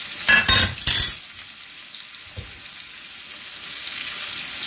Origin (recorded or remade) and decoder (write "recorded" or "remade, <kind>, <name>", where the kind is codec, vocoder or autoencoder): recorded